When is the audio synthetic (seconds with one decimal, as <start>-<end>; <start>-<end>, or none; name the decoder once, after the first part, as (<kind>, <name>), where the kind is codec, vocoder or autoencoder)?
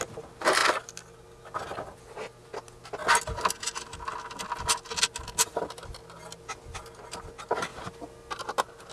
none